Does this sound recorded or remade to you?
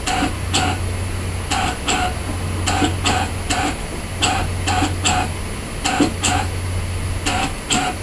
recorded